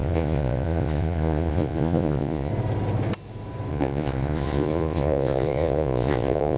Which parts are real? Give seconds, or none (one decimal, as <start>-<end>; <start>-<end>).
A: 2.5-3.7